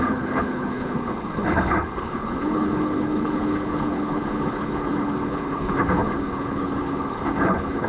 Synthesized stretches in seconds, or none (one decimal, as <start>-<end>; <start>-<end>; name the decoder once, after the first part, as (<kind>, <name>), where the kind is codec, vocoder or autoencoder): 0.0-7.9 (codec, HILCodec)